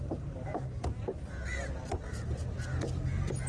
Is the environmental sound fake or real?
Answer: real